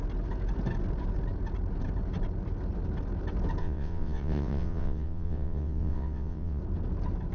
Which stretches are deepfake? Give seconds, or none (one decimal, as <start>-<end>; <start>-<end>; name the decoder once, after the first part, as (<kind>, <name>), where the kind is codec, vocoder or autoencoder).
3.6-6.6 (vocoder, WaveNeXt)